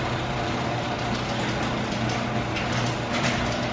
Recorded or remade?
recorded